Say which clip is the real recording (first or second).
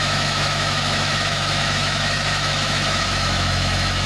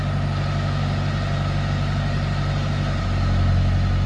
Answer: second